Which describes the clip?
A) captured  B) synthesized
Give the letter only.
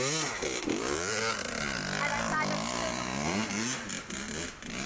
A